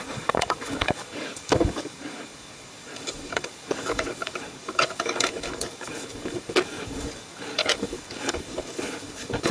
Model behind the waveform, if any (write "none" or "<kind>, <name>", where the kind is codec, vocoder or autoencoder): codec, DAC